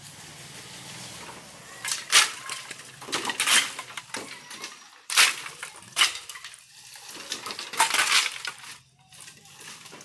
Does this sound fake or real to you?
real